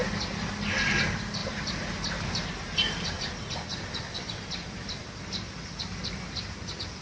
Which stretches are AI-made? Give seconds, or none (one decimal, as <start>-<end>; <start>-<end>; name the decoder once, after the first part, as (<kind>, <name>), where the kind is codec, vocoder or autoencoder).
1.4-3.2 (vocoder, BigVGAN v2)